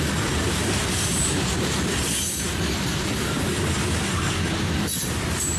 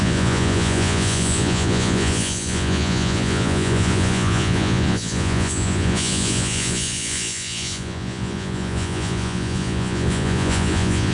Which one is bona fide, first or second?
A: first